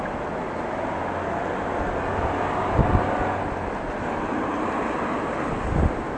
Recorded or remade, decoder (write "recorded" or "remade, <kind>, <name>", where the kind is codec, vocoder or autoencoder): recorded